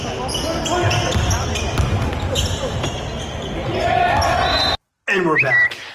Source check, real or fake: real